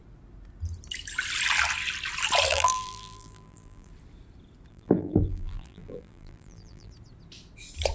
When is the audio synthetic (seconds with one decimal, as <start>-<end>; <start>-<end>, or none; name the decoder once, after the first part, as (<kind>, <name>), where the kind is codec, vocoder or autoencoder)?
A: 2.5-3.9 (vocoder, BigVGAN v2); 4.7-6.9